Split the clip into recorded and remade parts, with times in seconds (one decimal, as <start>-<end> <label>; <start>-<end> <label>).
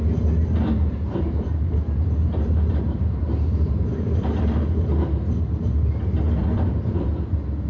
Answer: 0.0-0.4 recorded; 0.4-4.4 remade; 4.4-6.4 recorded; 6.4-7.1 remade; 7.1-7.7 recorded